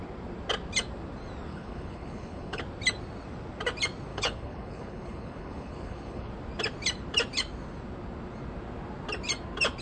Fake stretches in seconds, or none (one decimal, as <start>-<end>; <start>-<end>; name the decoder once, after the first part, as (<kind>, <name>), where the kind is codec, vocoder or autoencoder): 1.5-2.6 (codec, HILCodec); 4.1-6.3